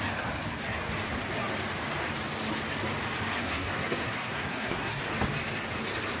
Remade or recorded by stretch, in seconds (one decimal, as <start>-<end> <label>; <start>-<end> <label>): 0.0-3.4 recorded; 3.4-5.0 remade; 5.0-6.2 recorded